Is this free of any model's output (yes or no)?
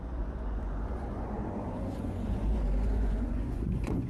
no